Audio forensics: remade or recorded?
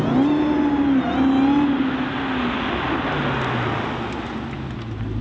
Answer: recorded